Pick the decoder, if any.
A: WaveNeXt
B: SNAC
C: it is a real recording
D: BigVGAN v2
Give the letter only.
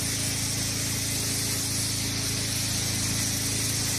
C